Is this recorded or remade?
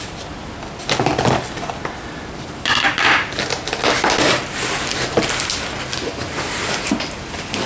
recorded